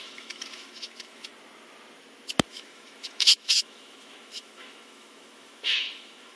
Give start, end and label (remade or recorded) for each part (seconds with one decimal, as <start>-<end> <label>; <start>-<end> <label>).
0.0-1.3 remade; 1.3-2.5 recorded; 2.5-6.4 remade